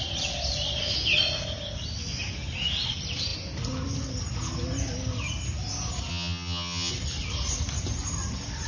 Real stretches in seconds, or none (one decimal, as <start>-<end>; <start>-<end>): 0.0-6.1; 6.9-8.7